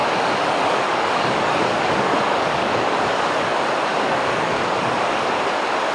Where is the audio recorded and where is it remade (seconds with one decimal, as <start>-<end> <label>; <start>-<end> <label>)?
0.0-3.5 remade; 3.5-3.9 recorded; 3.9-5.4 remade; 5.4-5.9 recorded